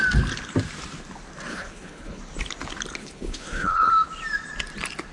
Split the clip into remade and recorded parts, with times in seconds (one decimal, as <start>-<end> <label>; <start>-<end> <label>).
0.0-1.5 recorded; 1.5-2.2 remade; 2.2-3.0 recorded; 3.0-3.9 remade; 3.9-5.1 recorded